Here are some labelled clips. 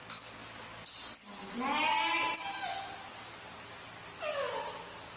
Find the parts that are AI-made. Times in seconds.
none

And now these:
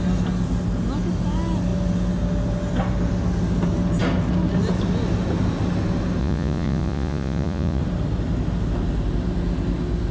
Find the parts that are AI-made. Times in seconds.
6.2-7.8 (vocoder, Vocos)

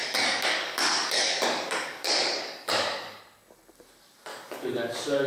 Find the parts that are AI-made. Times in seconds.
0.0-3.2 (codec, DAC); 4.3-5.3

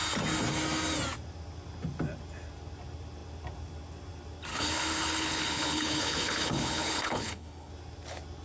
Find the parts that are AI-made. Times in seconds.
4.5-7.7 (codec, HILCodec)

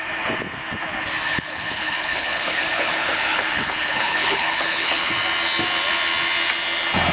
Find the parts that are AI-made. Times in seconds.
1.3-5.1 (codec, HILCodec)